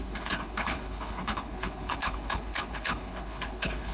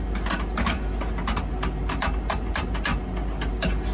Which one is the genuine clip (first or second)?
second